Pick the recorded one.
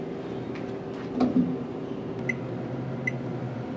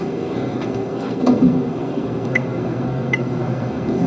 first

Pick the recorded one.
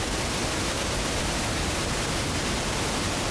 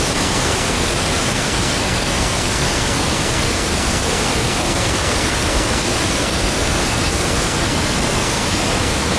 first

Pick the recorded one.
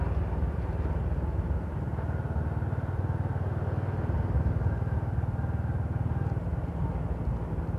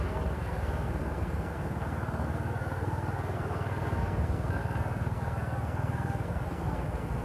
first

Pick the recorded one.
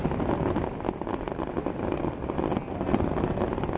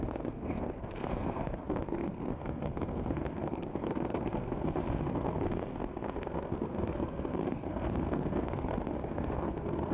first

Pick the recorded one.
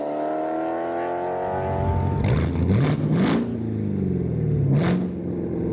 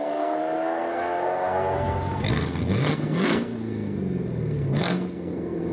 first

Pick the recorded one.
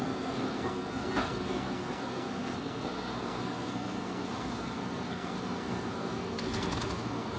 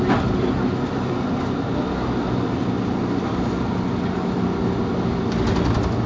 second